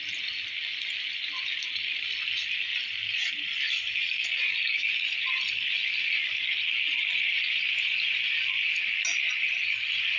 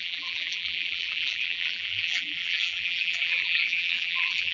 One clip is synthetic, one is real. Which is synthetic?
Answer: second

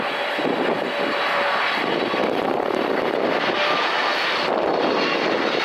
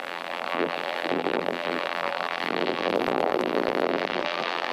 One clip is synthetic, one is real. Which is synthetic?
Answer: second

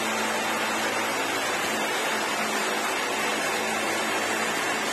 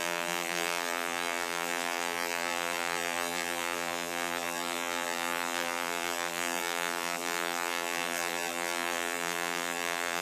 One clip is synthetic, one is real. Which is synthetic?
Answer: second